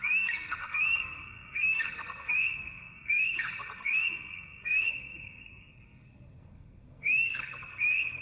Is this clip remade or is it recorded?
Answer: remade